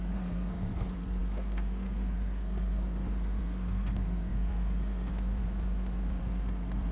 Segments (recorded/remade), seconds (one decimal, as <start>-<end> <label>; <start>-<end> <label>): 0.0-5.1 remade; 5.1-6.2 recorded; 6.2-6.9 remade